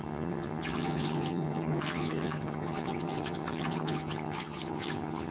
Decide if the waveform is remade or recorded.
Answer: remade